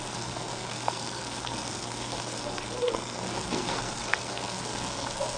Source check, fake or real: fake